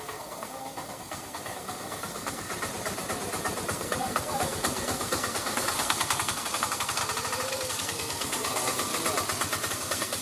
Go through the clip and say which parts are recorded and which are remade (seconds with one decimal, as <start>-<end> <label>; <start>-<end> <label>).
0.0-2.5 remade; 2.5-3.7 recorded; 3.7-7.0 remade; 7.0-7.5 recorded; 7.5-8.9 remade; 8.9-9.7 recorded; 9.7-10.2 remade